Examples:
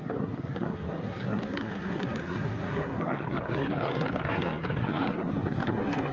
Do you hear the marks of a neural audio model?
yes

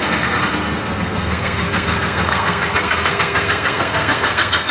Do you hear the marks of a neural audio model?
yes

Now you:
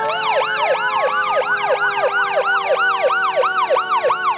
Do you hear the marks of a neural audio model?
no